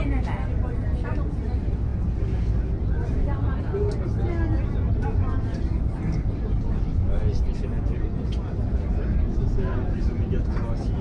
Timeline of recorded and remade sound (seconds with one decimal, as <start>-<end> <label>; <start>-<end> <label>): 0.0-11.0 recorded